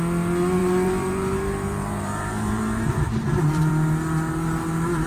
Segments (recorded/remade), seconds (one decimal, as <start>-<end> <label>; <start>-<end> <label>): 0.0-0.6 recorded; 0.6-3.7 remade; 3.7-5.1 recorded